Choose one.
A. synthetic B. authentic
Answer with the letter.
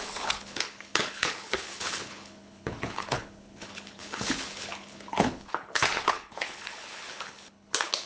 A